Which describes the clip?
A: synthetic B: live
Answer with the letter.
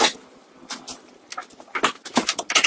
B